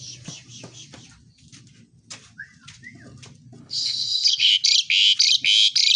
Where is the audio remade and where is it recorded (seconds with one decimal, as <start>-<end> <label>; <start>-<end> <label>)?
0.0-3.6 recorded; 3.6-4.5 remade; 4.5-6.0 recorded

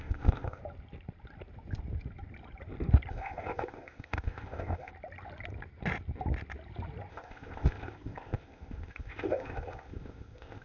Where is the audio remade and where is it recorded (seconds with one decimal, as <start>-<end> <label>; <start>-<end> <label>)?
0.0-0.6 remade; 0.6-3.1 recorded; 3.1-4.9 remade; 4.9-7.1 recorded; 7.1-10.6 remade

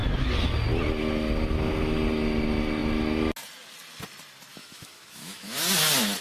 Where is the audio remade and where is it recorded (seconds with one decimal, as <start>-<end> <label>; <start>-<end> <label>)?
0.0-4.5 recorded; 4.5-5.6 remade; 5.6-6.2 recorded

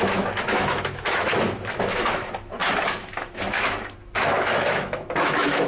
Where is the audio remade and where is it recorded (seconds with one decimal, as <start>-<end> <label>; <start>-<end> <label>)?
0.0-5.7 remade